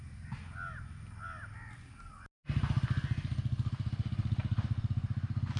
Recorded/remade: recorded